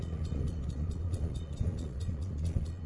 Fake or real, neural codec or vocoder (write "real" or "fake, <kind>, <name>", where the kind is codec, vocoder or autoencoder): fake, vocoder, Vocos